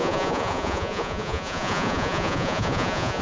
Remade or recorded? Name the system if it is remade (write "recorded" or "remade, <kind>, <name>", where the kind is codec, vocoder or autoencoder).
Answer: remade, vocoder, Vocos